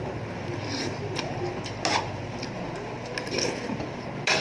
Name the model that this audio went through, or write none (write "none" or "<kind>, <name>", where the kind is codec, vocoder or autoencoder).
none